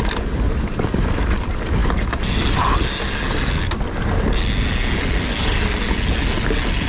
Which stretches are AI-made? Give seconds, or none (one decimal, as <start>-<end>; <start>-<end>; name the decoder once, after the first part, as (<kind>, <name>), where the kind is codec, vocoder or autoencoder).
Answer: none